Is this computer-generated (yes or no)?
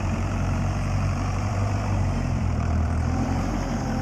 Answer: yes